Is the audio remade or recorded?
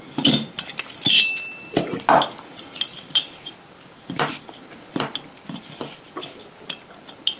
recorded